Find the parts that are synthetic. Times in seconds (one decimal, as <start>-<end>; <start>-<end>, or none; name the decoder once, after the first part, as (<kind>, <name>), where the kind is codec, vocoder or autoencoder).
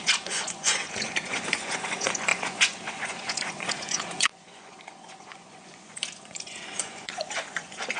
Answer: 0.0-8.0 (vocoder, Vocos)